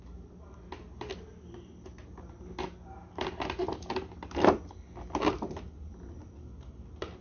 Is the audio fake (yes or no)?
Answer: no